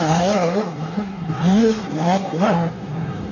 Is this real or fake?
fake